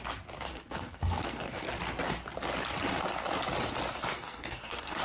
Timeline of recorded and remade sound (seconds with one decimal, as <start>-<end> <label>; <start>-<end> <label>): 0.0-0.5 recorded; 0.5-1.7 remade; 1.7-4.1 recorded; 4.1-5.0 remade